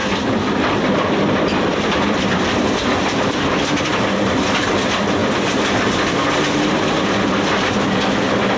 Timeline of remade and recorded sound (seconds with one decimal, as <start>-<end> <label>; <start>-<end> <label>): 0.0-4.3 remade; 4.3-5.2 recorded; 5.2-7.5 remade; 7.5-8.6 recorded